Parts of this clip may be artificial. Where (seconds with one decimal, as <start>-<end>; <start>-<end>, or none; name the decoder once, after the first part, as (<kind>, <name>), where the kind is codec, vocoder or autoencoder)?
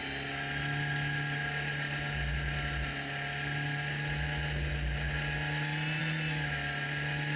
none